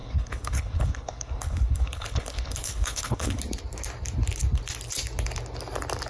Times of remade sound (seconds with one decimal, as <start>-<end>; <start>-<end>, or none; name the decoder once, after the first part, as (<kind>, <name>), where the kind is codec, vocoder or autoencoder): 0.0-3.4 (codec, HILCodec)